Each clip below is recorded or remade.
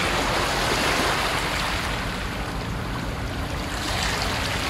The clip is recorded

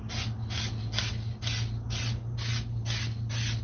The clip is recorded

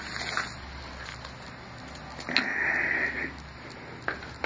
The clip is recorded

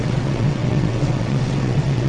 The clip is remade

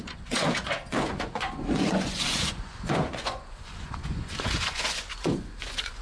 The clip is remade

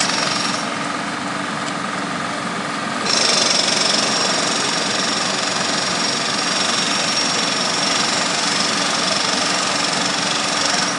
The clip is recorded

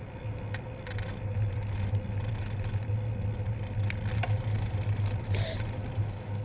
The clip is recorded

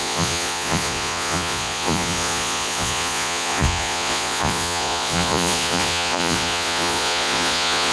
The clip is remade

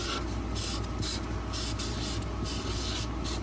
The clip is recorded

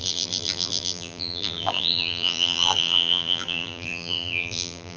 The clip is remade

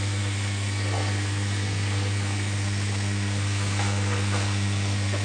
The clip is remade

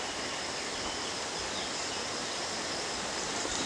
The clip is recorded